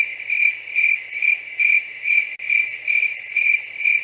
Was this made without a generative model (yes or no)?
yes